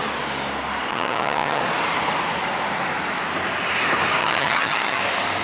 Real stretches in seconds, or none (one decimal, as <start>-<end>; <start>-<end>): 0.0-0.9; 1.6-4.2; 5.0-5.4